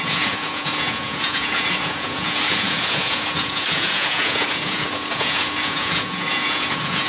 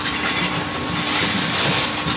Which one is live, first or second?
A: second